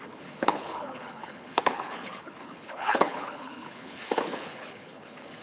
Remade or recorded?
remade